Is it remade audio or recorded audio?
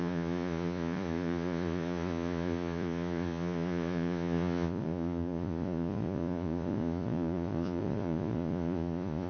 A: remade